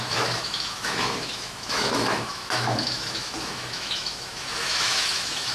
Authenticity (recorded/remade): remade